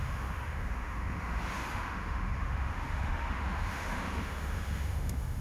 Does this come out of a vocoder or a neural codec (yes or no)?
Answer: yes